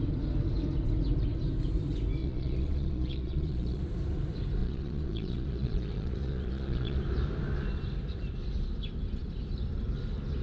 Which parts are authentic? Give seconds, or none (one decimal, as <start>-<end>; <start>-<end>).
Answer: 0.0-2.2; 3.8-4.6; 7.0-10.4